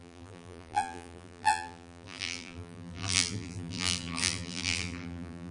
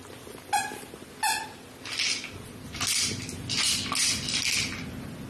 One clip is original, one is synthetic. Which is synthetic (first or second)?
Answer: first